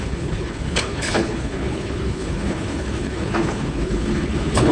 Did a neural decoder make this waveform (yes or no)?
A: yes